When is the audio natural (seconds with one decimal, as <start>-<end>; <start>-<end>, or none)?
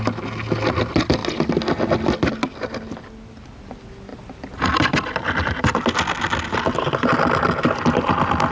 0.0-4.1; 5.7-8.5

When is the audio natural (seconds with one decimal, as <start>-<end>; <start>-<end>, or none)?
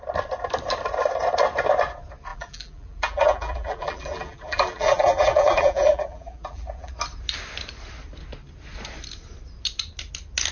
0.0-2.3; 6.9-10.5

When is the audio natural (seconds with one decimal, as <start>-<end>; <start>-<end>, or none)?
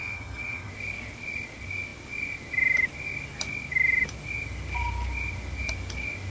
0.7-6.3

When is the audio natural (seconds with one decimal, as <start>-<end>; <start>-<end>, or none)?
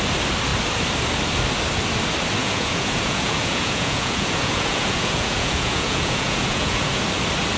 0.0-2.4; 7.0-7.6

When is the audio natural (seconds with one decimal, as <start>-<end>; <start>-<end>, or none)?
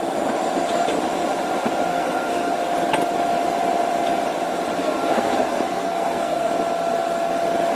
0.0-1.9; 2.5-4.8; 6.5-7.7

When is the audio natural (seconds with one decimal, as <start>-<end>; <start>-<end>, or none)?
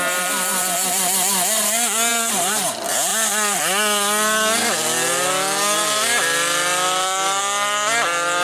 0.0-2.1; 2.7-8.4